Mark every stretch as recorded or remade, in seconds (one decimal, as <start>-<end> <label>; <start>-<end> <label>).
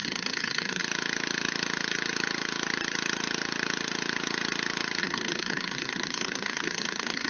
0.0-0.8 remade; 0.8-5.0 recorded; 5.0-7.3 remade